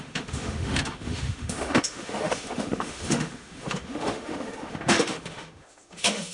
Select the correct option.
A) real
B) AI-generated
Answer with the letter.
B